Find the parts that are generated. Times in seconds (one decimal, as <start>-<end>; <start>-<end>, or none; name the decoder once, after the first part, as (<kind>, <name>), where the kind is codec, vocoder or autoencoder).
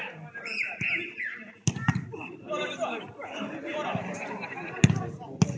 none